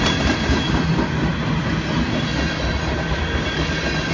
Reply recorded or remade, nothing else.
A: recorded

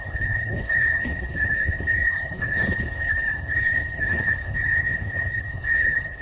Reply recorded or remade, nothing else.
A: remade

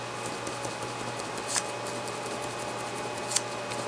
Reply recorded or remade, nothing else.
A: recorded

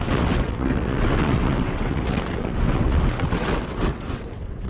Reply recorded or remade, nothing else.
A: remade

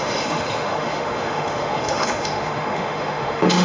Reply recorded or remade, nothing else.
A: remade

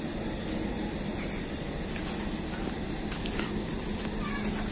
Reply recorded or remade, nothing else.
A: recorded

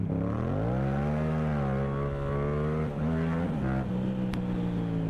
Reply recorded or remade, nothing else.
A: recorded